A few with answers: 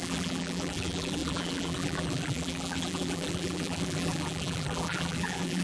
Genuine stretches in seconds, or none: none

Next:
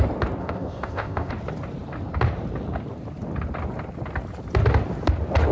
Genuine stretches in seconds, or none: 0.0-0.4; 1.3-5.5